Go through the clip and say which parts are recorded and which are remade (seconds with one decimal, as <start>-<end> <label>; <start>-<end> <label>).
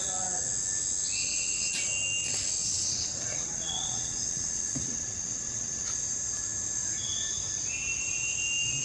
0.0-1.2 recorded; 1.2-1.7 remade; 1.7-2.6 recorded; 2.6-5.9 remade; 5.9-8.8 recorded